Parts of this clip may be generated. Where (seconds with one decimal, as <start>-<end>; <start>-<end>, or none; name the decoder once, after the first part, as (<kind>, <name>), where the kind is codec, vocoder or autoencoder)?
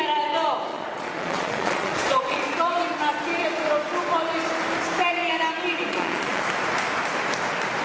0.7-2.7 (vocoder, Vocos); 5.9-6.4